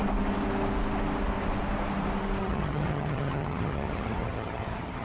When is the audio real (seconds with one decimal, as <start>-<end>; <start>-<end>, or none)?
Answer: 0.0-2.4